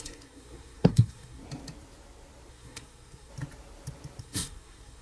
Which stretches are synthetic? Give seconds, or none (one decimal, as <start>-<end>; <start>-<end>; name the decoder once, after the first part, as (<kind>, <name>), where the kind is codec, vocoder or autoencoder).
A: 0.0-1.4 (codec, SNAC); 2.5-3.3; 4.2-5.0